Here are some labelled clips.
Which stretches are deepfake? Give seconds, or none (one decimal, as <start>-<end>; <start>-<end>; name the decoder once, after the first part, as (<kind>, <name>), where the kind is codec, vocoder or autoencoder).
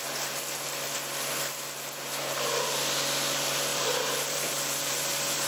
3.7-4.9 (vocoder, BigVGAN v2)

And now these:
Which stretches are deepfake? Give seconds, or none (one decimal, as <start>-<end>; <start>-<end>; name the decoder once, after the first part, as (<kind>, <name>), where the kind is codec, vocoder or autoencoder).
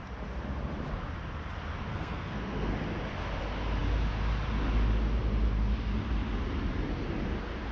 1.9-2.7 (codec, SNAC)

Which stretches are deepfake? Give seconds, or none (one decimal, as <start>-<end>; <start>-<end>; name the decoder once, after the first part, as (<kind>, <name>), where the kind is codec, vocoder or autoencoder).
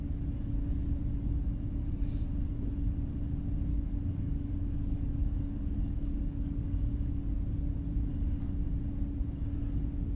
3.7-7.2 (codec, DAC)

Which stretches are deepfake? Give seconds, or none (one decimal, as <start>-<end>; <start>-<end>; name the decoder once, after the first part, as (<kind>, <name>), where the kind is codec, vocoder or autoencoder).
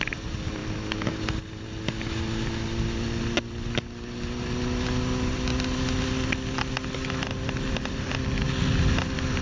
none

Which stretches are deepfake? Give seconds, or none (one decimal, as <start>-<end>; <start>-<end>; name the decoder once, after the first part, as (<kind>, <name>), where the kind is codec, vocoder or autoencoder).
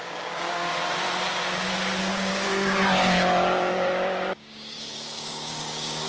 0.0-0.7 (codec, DAC); 2.0-6.1